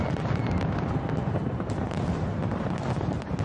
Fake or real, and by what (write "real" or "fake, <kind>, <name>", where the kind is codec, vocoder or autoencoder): real